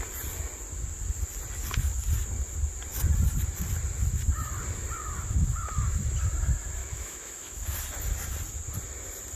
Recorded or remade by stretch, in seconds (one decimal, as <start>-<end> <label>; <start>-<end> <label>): 0.0-6.8 recorded; 6.8-7.6 remade; 7.6-9.4 recorded